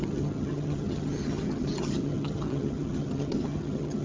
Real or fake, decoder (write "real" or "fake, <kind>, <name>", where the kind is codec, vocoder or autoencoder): fake, vocoder, HiFi-GAN